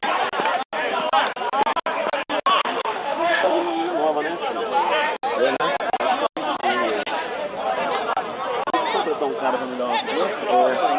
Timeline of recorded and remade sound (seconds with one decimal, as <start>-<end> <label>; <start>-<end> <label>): 0.0-2.6 recorded; 2.6-3.9 remade; 3.9-11.0 recorded